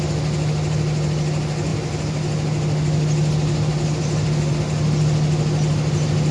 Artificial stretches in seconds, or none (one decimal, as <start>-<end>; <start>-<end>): none